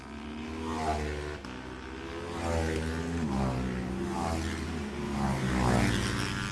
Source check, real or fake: real